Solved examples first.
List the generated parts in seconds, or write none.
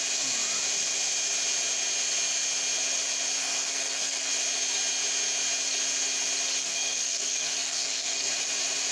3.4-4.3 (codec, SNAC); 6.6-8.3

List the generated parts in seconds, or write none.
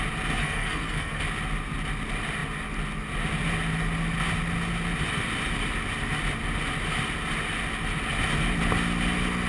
0.4-1.2 (codec, SNAC)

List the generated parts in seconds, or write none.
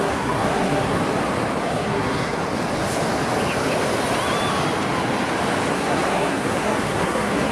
0.0-1.0 (codec, SNAC); 1.6-2.4; 5.7-7.5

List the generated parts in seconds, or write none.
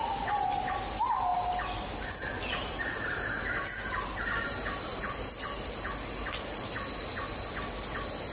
none